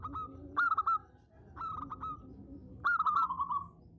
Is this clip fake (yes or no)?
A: no